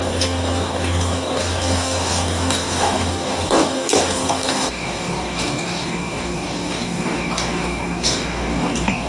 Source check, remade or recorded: remade